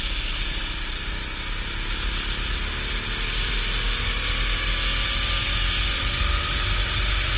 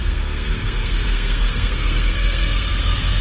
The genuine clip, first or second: first